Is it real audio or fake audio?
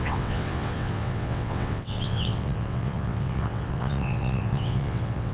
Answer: fake